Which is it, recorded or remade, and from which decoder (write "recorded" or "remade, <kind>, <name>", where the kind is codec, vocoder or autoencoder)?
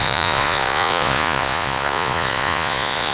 remade, vocoder, Vocos